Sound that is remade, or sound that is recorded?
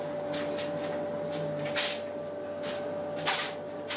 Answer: recorded